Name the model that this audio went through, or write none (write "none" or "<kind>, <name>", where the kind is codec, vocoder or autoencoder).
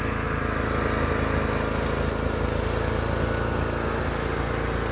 none